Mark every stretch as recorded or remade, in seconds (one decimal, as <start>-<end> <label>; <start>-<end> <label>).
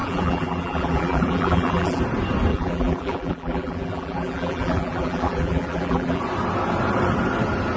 0.0-2.0 remade; 2.0-2.5 recorded; 2.5-6.2 remade; 6.2-7.8 recorded